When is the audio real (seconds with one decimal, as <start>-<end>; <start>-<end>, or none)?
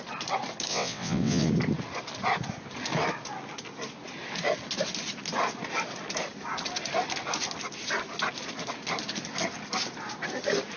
0.0-0.7; 1.5-10.8